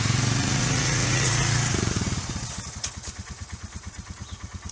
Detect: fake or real fake